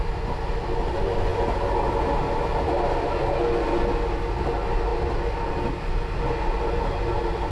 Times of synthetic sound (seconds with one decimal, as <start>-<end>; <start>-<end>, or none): none